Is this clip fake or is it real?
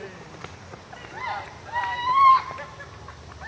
real